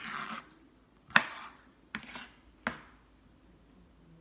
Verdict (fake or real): real